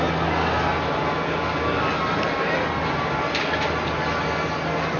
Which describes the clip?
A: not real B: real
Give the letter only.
B